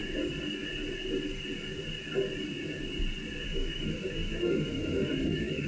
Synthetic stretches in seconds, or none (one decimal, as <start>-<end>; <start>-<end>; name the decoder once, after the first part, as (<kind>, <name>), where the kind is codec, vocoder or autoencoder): 3.4-5.7 (autoencoder, DAC-VAE)